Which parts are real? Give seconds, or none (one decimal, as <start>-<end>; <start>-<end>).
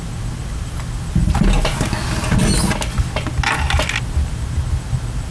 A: 0.0-5.3